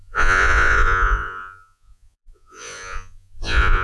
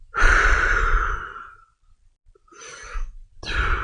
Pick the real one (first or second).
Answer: second